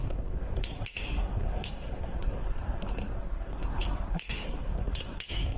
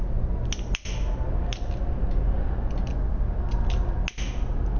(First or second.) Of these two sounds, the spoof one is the first